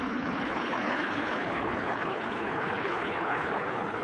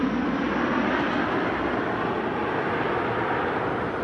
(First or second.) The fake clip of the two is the first